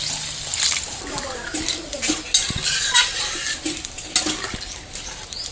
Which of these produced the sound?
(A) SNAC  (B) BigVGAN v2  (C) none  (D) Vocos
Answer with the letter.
C